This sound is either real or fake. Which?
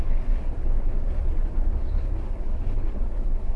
fake